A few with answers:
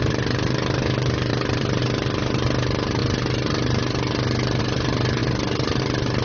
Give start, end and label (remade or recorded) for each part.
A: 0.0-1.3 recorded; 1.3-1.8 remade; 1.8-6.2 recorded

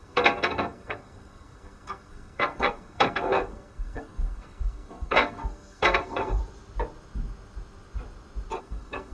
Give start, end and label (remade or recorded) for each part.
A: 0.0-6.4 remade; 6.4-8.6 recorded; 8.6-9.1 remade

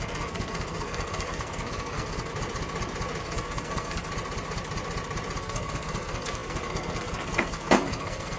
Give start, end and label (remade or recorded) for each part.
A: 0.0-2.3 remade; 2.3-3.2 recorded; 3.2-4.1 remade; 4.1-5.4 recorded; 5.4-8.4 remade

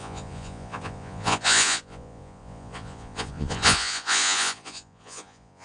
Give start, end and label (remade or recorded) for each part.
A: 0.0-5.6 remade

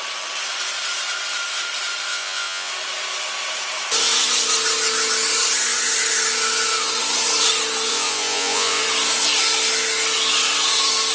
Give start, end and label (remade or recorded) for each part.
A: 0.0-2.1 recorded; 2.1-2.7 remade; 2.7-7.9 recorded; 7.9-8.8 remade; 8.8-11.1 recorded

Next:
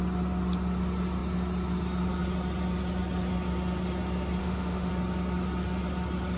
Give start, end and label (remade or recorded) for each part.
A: 0.0-4.4 recorded; 4.4-4.9 remade; 4.9-6.4 recorded

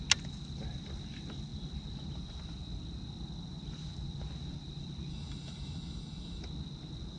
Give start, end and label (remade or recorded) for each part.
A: 0.0-5.1 recorded; 5.1-6.4 remade; 6.4-7.2 recorded